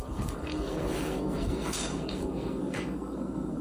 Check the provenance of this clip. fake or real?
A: fake